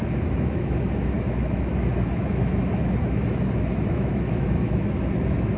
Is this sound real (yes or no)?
no